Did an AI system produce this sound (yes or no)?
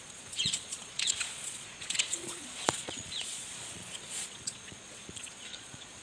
yes